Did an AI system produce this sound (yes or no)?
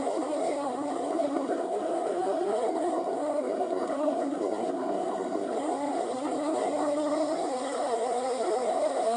yes